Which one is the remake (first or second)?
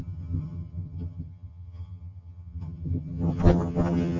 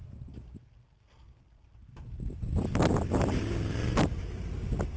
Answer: first